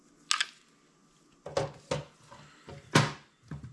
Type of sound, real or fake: real